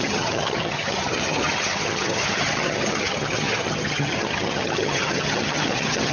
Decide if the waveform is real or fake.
fake